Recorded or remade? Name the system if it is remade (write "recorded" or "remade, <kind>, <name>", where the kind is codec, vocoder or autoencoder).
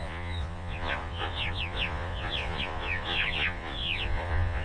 remade, vocoder, Vocos